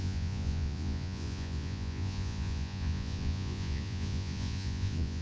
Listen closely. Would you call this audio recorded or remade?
remade